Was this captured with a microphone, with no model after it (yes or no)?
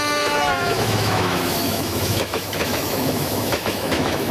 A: no